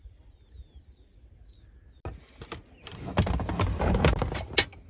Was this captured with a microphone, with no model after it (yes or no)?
yes